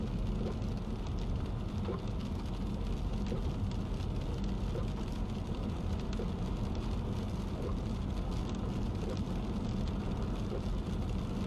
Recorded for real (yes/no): yes